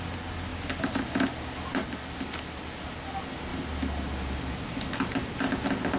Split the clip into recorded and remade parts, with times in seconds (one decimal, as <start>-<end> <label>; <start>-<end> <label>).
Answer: 0.0-6.0 recorded